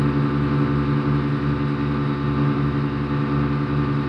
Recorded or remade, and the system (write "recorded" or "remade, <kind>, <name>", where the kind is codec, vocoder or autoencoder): recorded